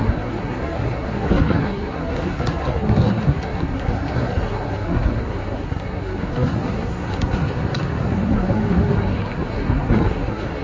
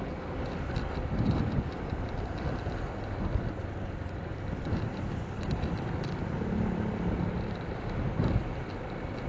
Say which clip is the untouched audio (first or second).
second